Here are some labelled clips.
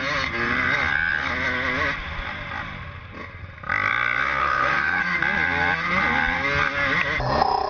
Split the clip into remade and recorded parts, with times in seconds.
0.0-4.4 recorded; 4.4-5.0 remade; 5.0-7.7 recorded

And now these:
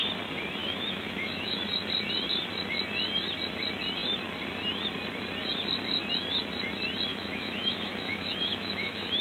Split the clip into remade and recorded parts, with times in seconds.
0.0-0.6 recorded; 0.6-1.6 remade; 1.6-7.1 recorded; 7.1-9.2 remade

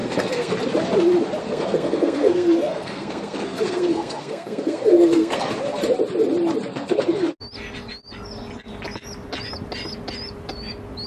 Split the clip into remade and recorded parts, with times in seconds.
0.0-0.5 remade; 0.5-1.4 recorded; 1.4-5.5 remade; 5.5-6.7 recorded; 6.7-7.3 remade; 7.3-11.1 recorded

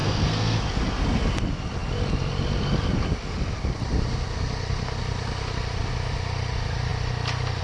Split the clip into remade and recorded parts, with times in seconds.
0.0-0.6 remade; 0.6-7.6 recorded

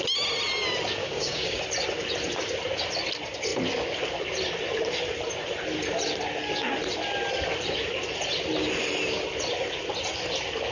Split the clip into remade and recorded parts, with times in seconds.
0.0-1.0 recorded; 1.0-1.6 remade; 1.6-10.7 recorded

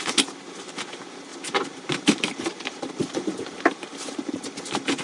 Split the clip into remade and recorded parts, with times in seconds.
0.0-5.0 remade